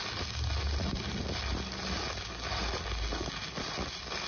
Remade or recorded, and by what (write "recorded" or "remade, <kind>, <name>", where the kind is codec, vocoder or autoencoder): recorded